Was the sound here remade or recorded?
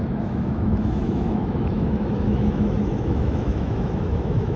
remade